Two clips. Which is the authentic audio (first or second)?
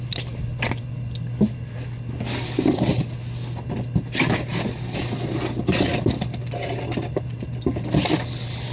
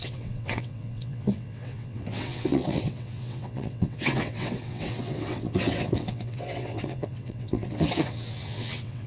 first